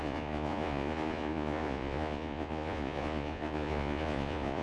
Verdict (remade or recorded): remade